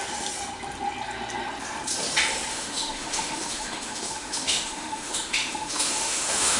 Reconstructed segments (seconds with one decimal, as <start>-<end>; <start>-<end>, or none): 2.5-6.6